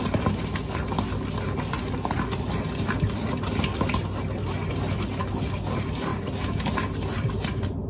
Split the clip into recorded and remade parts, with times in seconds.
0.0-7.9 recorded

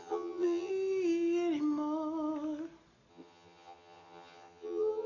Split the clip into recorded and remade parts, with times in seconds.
0.0-0.7 remade; 0.7-3.1 recorded; 3.1-5.1 remade